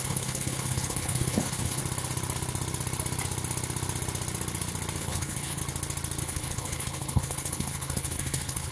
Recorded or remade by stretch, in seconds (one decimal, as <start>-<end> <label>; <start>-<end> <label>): 0.0-1.8 remade; 1.8-5.0 recorded; 5.0-5.6 remade; 5.6-6.2 recorded; 6.2-8.7 remade